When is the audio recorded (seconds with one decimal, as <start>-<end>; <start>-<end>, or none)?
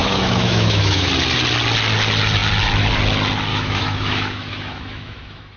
1.1-3.5